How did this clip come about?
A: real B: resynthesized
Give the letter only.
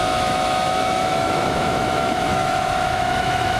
B